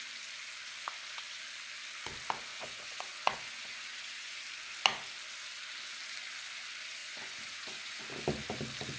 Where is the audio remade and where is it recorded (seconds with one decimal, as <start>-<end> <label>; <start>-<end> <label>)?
0.0-2.5 recorded; 2.5-4.4 remade; 4.4-7.0 recorded; 7.0-8.0 remade; 8.0-9.0 recorded